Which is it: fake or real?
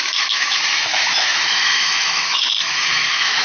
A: fake